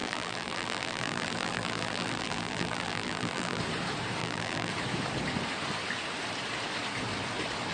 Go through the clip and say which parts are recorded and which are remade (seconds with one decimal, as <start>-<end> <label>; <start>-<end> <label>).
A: 0.0-3.6 remade; 3.6-4.2 recorded; 4.2-4.7 remade; 4.7-7.7 recorded